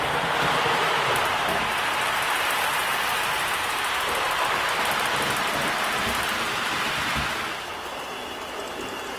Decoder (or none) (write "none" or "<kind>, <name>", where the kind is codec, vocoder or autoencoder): none